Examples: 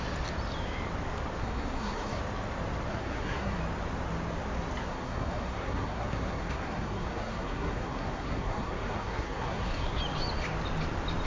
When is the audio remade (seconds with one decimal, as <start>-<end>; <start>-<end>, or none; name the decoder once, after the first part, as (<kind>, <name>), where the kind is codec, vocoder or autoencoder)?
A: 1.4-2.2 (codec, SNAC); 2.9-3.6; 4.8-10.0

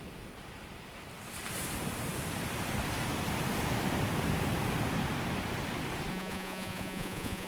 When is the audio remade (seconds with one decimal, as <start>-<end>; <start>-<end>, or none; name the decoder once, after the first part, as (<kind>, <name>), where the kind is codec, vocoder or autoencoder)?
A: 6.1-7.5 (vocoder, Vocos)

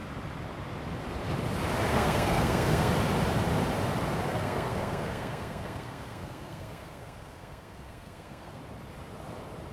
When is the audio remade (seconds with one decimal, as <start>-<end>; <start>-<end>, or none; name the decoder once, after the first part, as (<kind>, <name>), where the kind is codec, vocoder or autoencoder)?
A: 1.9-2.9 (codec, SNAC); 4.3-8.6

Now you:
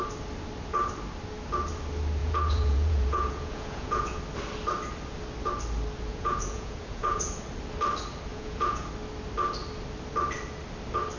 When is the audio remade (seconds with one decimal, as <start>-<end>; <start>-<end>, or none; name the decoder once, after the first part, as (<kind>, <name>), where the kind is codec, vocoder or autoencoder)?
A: 2.2-4.2 (vocoder, Vocos); 6.1-7.3; 8.3-8.9

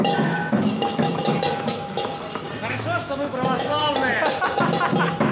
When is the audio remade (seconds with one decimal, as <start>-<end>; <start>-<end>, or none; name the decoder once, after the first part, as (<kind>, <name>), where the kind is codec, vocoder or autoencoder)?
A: 0.0-2.1 (autoencoder, DAC-VAE); 2.7-3.8

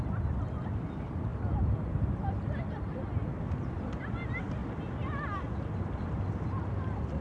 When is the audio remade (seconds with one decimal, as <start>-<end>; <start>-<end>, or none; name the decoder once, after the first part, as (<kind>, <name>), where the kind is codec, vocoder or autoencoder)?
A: 1.3-1.9 (vocoder, BigVGAN v2); 3.2-4.0; 4.6-6.8

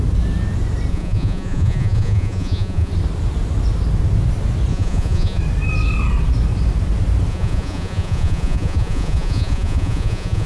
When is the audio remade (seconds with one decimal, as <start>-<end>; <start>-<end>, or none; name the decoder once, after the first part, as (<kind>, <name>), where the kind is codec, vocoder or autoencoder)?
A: 0.9-2.9 (vocoder, Vocos); 4.7-5.4; 7.3-10.5

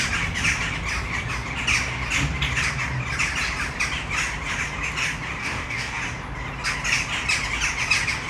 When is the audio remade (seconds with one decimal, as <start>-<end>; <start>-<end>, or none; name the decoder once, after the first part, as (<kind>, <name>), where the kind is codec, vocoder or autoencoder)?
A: 5.4-6.0 (codec, DAC)